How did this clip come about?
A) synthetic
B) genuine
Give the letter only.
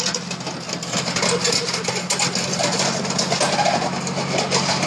B